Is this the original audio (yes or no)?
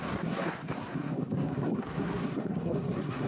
no